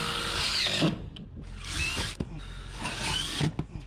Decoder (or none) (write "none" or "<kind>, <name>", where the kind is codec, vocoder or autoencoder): codec, DAC